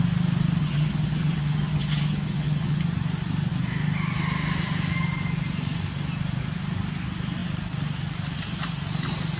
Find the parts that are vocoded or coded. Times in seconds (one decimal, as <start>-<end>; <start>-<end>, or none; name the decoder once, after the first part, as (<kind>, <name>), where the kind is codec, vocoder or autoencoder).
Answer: 0.6-2.8 (vocoder, HiFi-GAN)

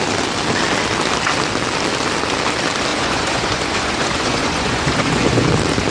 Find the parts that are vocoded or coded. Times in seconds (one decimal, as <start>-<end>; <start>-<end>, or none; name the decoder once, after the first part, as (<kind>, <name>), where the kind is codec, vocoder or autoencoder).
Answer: 2.9-5.5 (vocoder, Vocos)

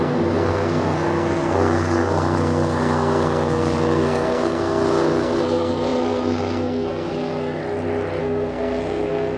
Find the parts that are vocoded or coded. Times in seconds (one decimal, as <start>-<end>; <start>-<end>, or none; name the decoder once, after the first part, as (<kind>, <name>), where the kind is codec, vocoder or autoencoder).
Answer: 0.0-7.6 (codec, SNAC); 8.2-9.4

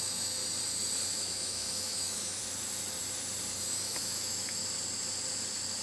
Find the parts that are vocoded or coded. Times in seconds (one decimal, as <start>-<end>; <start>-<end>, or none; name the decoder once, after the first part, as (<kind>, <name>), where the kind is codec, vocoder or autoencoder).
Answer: 0.0-0.4 (autoencoder, DAC-VAE); 1.1-2.4; 3.6-4.6

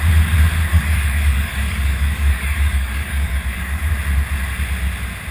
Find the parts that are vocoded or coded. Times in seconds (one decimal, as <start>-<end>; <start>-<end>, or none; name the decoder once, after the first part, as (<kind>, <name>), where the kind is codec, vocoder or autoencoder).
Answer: 0.7-3.9 (codec, DAC)